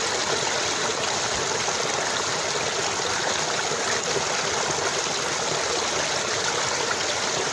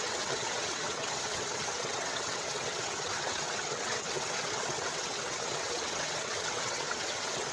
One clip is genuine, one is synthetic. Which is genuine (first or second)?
first